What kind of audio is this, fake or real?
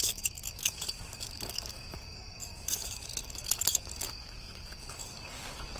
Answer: fake